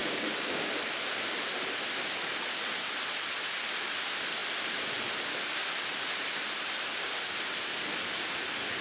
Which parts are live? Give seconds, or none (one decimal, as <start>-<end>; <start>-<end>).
0.7-8.8